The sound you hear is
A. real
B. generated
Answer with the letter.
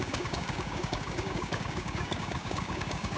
B